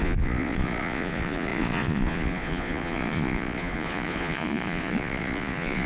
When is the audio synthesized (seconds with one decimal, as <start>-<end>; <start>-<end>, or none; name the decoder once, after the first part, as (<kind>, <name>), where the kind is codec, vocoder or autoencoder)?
0.0-5.9 (vocoder, Vocos)